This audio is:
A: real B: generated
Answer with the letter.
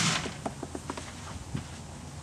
A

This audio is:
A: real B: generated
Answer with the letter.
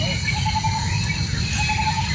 A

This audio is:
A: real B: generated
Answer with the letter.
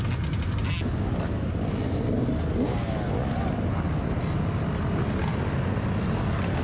A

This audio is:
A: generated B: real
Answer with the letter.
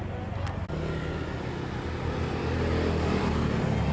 B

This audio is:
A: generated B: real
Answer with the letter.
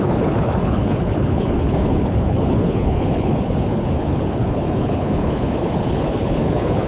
A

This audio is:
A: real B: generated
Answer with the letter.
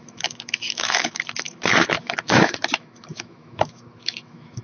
B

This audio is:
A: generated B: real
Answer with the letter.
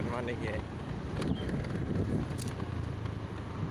B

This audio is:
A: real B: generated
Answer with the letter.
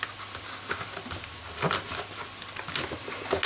A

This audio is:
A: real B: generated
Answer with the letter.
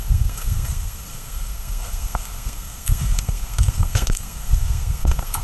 B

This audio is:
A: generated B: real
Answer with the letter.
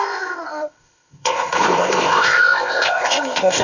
A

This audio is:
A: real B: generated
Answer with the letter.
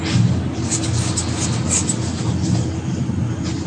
A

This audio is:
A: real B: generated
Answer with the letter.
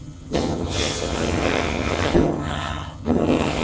B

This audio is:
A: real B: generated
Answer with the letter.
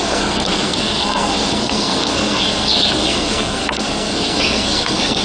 B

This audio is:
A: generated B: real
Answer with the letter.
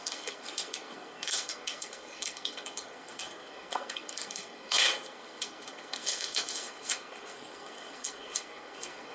A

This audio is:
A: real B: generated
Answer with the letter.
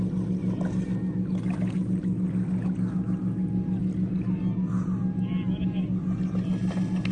A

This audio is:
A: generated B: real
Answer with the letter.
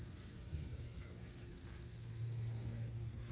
A